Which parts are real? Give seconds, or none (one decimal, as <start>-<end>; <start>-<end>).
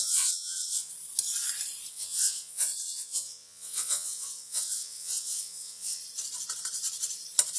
0.9-1.9; 6.0-7.6